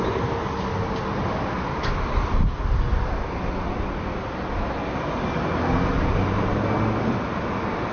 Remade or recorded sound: recorded